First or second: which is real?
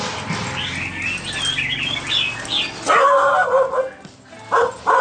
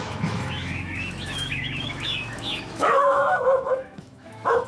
first